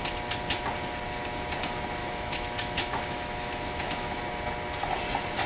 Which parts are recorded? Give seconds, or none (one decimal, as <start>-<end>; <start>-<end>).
0.0-2.0; 4.2-5.5